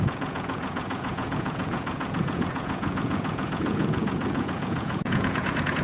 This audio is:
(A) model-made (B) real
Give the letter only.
A